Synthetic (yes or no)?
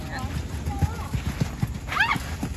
no